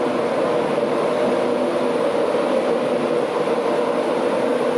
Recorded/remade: recorded